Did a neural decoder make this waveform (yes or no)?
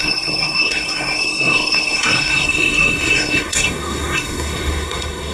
yes